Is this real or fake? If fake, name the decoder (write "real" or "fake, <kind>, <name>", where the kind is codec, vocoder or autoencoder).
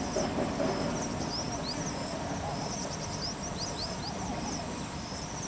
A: real